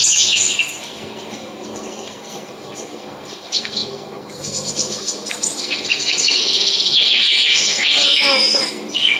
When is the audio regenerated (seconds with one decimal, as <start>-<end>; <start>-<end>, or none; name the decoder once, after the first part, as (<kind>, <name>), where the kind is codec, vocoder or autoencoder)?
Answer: 0.0-9.2 (codec, SNAC)